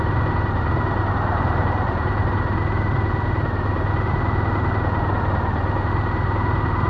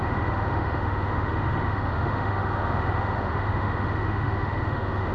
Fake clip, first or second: second